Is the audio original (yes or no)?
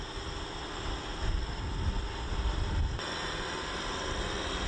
yes